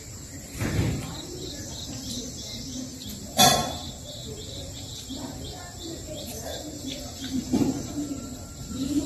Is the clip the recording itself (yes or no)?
no